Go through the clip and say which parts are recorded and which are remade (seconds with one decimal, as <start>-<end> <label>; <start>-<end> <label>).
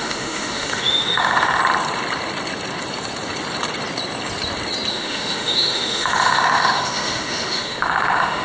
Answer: 0.0-1.6 remade; 1.6-4.9 recorded; 4.9-8.4 remade